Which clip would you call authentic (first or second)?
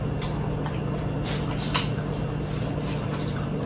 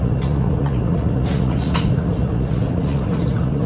first